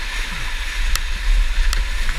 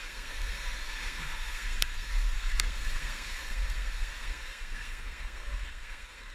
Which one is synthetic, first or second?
second